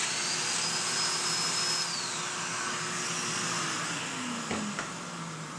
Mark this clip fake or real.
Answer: real